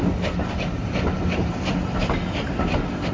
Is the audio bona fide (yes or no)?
yes